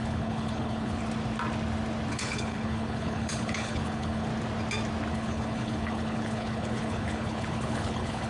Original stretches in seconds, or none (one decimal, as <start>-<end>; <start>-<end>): 1.0-2.1; 4.3-5.1